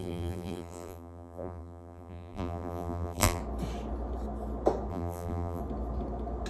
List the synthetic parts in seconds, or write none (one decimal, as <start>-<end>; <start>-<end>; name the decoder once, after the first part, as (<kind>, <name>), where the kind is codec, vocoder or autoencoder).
0.0-3.4 (vocoder, BigVGAN v2); 4.9-5.6